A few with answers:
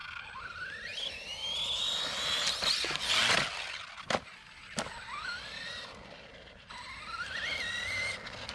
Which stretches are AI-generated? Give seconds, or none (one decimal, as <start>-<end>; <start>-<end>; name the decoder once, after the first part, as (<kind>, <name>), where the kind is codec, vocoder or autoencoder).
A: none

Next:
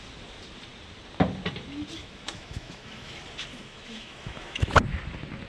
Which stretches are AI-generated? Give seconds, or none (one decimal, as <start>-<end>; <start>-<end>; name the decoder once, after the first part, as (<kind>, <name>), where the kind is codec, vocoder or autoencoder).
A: 2.0-3.1 (autoencoder, DAC-VAE); 3.5-4.7

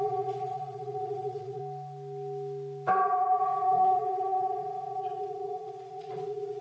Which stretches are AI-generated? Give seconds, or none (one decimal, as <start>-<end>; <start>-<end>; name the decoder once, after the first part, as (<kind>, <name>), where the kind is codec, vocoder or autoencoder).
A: 0.0-1.6 (vocoder, Vocos); 2.9-6.6

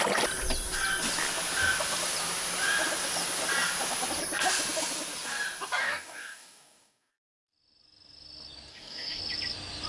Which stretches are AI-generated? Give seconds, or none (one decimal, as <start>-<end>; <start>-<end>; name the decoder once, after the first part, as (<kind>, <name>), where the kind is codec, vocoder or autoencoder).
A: 5.8-7.1 (codec, DAC); 8.7-9.2

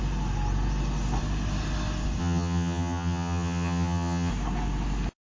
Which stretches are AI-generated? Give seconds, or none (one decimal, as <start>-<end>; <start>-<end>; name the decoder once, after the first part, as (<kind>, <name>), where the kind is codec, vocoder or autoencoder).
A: 2.2-4.3 (vocoder, HiFi-GAN)

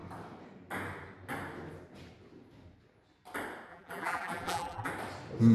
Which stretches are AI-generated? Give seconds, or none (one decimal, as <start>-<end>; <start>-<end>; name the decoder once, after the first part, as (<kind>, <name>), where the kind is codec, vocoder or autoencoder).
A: 3.7-4.9 (vocoder, BigVGAN v2)

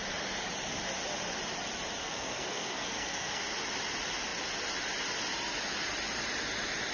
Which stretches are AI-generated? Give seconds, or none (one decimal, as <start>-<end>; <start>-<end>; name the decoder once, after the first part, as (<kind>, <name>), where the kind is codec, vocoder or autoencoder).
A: 2.0-3.4 (codec, SNAC)

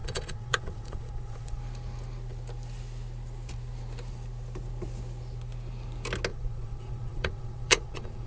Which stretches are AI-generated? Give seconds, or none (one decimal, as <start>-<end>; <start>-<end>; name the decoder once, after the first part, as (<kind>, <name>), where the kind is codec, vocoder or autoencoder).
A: 0.0-1.6 (vocoder, Vocos); 6.3-8.3